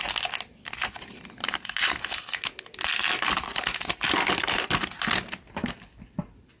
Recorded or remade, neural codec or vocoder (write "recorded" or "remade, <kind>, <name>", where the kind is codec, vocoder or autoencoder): recorded